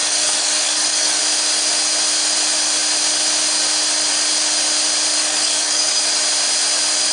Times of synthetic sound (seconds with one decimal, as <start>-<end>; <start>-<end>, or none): 0.0-1.2; 5.2-6.0